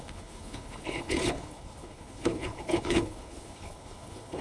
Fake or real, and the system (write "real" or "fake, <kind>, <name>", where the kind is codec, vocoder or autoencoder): fake, codec, HILCodec